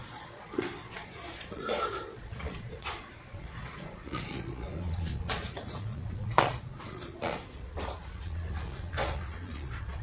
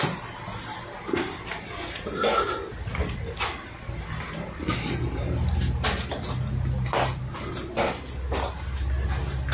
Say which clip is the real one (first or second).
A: second